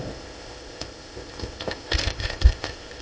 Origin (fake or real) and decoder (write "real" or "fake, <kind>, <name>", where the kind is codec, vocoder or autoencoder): fake, codec, ZipCodec